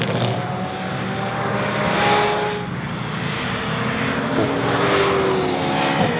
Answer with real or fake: real